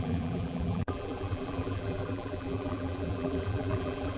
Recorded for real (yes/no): no